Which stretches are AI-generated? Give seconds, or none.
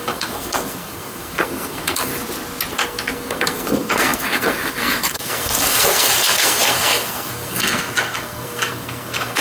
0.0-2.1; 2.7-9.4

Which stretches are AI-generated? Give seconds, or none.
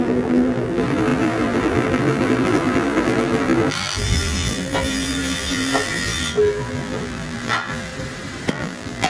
0.0-7.9; 8.5-9.1